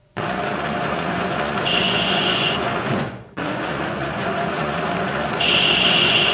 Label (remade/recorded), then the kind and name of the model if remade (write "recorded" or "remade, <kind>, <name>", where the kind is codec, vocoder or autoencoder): remade, vocoder, Vocos